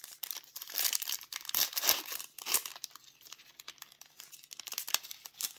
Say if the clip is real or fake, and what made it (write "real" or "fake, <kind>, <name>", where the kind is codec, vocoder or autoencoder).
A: fake, vocoder, BigVGAN v2